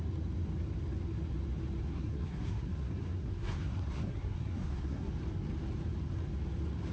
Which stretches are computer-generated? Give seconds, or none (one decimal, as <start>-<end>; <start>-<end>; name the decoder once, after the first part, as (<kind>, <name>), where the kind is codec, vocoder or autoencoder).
1.9-5.1 (codec, SNAC)